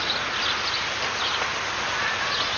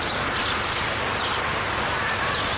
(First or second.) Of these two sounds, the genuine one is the first